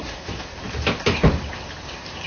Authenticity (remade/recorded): remade